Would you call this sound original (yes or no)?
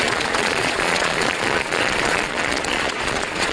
no